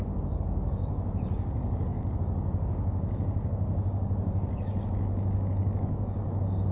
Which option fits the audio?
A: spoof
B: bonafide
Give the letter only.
A